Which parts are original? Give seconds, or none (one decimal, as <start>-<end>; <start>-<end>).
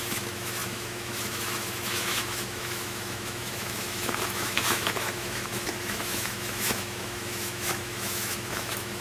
none